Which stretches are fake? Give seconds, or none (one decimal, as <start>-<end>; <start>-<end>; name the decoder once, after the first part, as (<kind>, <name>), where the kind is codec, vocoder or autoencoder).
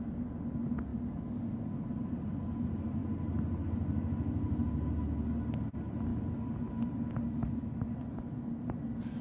none